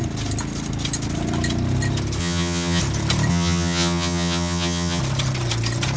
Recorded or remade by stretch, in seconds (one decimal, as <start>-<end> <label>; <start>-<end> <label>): 0.0-2.2 recorded; 2.2-2.8 remade; 2.8-3.3 recorded; 3.3-5.0 remade; 5.0-6.0 recorded